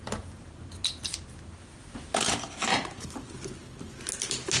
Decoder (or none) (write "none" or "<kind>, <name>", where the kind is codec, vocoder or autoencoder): none